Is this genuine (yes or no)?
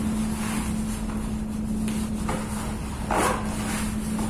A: yes